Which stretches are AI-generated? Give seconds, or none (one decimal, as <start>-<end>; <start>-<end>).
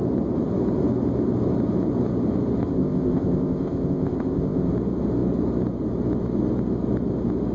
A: 2.6-4.7